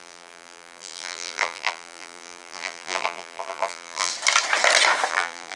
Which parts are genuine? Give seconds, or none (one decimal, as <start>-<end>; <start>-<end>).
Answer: 4.1-5.1